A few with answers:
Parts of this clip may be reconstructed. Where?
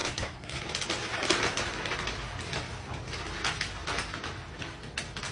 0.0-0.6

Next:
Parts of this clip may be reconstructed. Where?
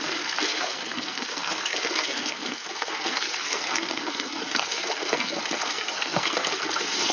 0.0-7.1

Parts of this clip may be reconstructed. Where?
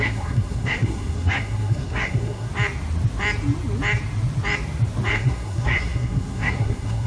0.0-2.5; 5.1-7.1